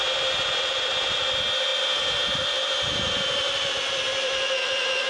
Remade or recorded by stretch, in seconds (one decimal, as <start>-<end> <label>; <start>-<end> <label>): 0.0-5.1 remade

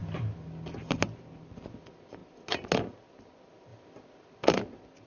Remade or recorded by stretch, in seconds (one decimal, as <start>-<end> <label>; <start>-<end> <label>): 0.0-5.1 recorded

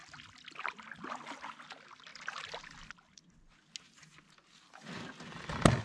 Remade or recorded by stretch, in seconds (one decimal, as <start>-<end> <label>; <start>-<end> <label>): 0.0-5.8 recorded

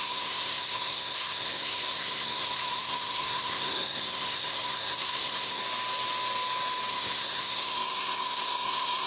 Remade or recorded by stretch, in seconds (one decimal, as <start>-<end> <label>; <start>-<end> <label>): 0.0-5.6 remade; 5.6-6.9 recorded; 6.9-9.1 remade

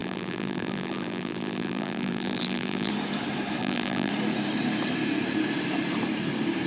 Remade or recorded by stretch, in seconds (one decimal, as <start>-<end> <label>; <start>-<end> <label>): 0.0-2.9 remade; 2.9-3.6 recorded; 3.6-4.1 remade; 4.1-6.7 recorded

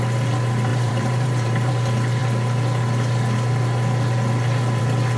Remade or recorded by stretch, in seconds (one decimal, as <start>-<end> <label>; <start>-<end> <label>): 0.0-0.7 recorded; 0.7-1.7 remade; 1.7-5.2 recorded

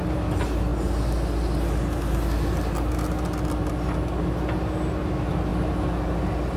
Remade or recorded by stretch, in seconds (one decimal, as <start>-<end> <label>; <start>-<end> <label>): 0.0-6.6 recorded